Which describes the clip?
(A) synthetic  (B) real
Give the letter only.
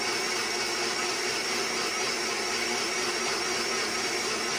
B